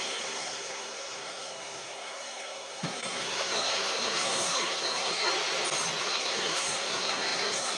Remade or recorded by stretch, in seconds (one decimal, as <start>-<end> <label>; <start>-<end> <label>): 0.0-5.3 remade; 5.3-6.0 recorded; 6.0-7.8 remade